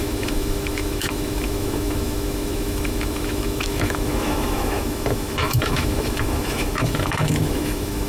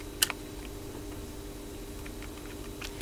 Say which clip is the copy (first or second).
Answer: first